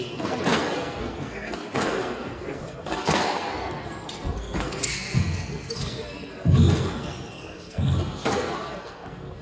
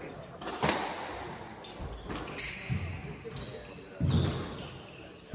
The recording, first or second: second